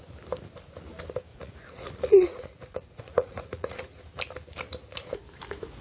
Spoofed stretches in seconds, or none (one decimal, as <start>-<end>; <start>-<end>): 1.3-4.0